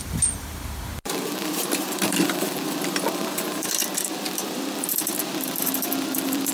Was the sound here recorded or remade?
remade